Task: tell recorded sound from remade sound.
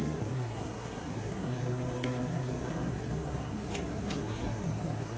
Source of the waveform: remade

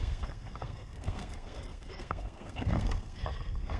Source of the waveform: remade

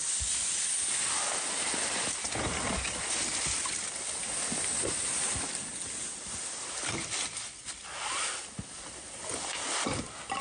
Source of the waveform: recorded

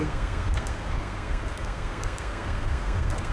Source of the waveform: remade